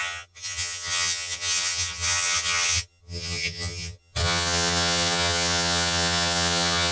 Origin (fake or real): fake